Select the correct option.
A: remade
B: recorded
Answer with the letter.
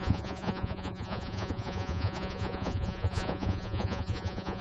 A